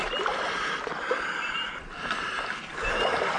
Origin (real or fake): real